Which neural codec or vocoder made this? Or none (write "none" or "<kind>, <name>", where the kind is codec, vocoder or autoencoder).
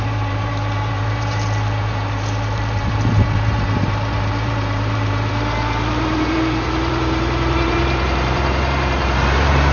vocoder, BigVGAN v2